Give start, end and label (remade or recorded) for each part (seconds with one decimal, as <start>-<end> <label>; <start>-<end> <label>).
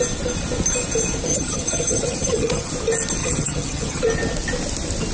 0.0-1.3 recorded; 1.3-2.7 remade; 2.7-3.2 recorded; 3.2-4.0 remade; 4.0-5.1 recorded